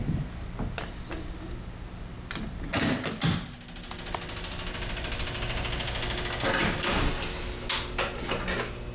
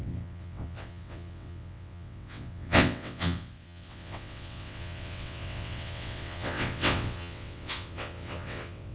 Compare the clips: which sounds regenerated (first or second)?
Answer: second